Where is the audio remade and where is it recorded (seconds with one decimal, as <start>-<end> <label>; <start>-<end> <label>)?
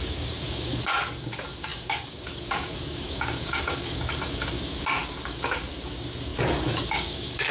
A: 0.0-7.5 remade